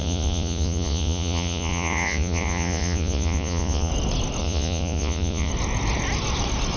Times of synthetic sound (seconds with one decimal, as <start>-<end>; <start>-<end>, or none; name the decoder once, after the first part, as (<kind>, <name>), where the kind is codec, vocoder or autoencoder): 0.0-3.9 (vocoder, Vocos); 4.4-5.5

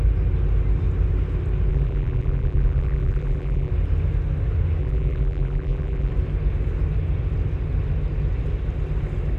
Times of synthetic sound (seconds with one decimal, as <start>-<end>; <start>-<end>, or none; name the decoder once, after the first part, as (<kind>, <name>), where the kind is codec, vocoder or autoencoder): 1.7-3.7 (vocoder, BigVGAN v2); 4.8-6.1

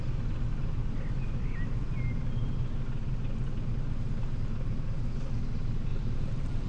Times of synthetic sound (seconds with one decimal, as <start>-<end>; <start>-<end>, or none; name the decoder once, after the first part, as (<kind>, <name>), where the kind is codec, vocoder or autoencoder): 5.9-6.7 (vocoder, BigVGAN v2)

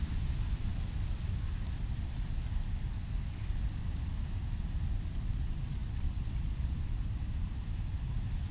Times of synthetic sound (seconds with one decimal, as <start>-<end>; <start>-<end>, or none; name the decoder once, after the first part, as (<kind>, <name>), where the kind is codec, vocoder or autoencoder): none

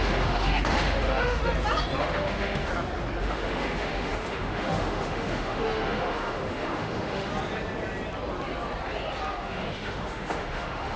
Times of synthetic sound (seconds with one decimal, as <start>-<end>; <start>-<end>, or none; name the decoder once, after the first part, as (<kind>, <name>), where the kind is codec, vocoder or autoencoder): 0.0-1.4 (autoencoder, DAC-VAE); 2.0-2.7; 3.2-7.3; 9.3-11.0